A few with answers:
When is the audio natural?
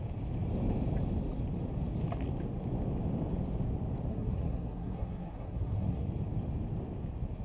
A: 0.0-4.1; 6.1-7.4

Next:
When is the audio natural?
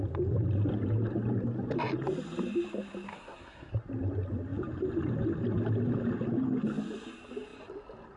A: 0.0-3.1; 3.7-8.2